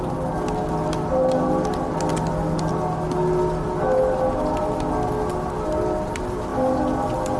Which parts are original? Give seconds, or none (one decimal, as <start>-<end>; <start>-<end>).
0.0-7.4